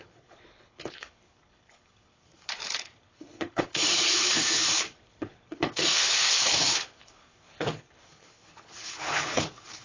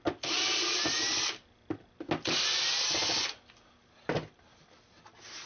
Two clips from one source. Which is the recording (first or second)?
second